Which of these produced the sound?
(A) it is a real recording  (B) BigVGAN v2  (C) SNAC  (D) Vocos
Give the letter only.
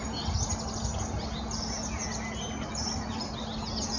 A